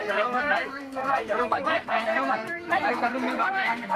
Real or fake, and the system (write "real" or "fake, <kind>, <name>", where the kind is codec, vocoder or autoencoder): fake, codec, SNAC